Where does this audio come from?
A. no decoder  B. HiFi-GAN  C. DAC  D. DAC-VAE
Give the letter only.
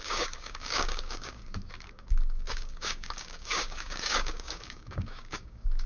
C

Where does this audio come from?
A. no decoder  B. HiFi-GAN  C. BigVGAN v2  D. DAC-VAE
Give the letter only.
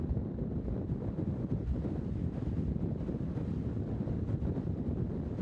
A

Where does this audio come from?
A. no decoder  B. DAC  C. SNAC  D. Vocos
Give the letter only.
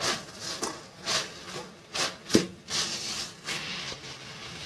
A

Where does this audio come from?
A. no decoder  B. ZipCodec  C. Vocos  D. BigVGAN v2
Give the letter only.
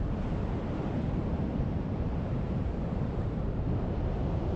D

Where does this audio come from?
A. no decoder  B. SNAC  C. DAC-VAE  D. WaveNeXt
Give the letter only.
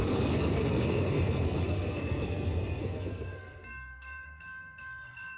B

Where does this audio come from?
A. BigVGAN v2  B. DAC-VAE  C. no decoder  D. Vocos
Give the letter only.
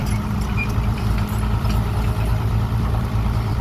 A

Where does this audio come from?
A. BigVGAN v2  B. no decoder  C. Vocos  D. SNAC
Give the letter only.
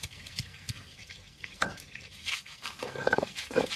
D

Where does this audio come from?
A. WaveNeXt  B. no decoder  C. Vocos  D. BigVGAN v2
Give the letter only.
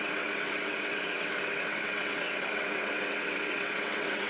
A